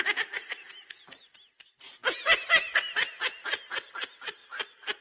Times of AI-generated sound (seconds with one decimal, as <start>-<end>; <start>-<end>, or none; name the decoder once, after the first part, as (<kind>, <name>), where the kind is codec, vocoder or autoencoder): none